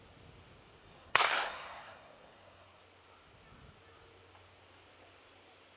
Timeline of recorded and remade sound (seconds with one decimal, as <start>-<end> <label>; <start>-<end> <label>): 0.0-0.8 recorded; 0.8-2.8 remade; 2.8-5.8 recorded